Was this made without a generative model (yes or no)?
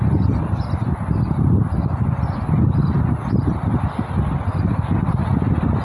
yes